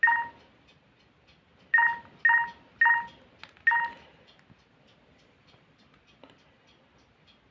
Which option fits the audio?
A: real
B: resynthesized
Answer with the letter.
A